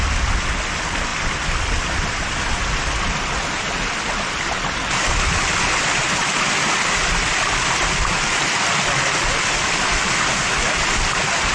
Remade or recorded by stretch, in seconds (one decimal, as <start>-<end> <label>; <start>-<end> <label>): 0.0-1.1 recorded; 1.1-6.4 remade; 6.4-11.5 recorded